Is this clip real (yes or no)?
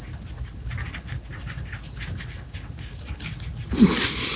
yes